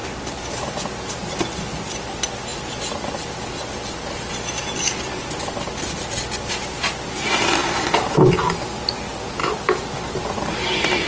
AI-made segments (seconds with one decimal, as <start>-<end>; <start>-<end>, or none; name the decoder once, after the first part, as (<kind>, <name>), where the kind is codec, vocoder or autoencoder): 0.0-0.8 (vocoder, BigVGAN v2); 2.5-6.5; 7.6-8.3